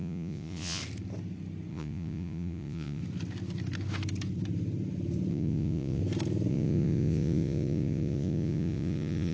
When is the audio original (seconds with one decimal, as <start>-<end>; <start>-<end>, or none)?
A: 0.8-1.7; 3.0-5.3; 6.0-6.5